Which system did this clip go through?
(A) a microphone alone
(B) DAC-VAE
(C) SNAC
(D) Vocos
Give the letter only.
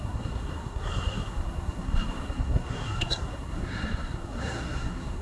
C